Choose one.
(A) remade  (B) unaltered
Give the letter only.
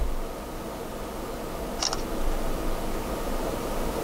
B